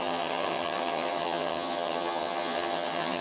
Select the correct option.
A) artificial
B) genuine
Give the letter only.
A